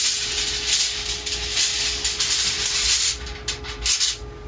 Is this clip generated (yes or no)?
no